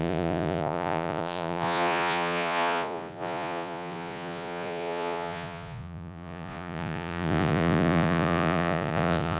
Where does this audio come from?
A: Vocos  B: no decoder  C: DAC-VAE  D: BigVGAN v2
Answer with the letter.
A